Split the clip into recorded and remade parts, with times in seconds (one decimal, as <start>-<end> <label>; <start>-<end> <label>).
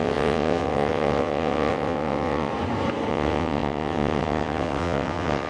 0.0-2.5 remade; 2.5-3.1 recorded; 3.1-5.5 remade